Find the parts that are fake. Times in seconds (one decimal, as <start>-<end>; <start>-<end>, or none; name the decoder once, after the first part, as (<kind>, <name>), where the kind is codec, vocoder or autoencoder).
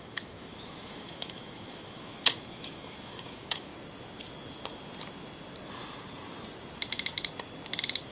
0.0-3.7 (autoencoder, DAC-VAE)